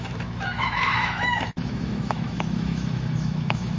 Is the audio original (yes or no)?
no